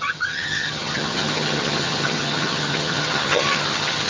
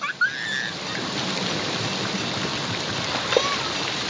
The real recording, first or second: second